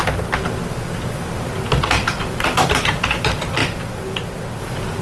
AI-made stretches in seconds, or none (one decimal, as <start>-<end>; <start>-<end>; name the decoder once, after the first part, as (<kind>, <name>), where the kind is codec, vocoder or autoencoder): none